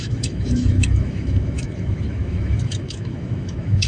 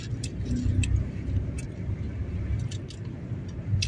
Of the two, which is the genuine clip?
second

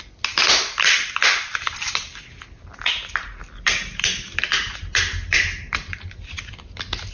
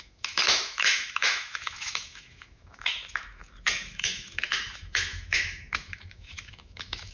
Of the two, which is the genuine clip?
first